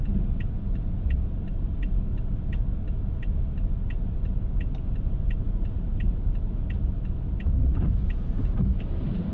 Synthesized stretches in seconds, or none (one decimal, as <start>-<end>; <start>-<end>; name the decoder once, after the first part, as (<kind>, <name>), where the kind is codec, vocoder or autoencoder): 0.0-1.2 (vocoder, BigVGAN v2); 3.8-4.3; 5.4-9.3